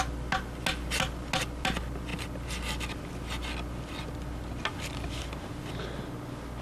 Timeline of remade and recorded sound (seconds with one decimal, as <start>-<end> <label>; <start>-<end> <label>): 0.0-6.6 recorded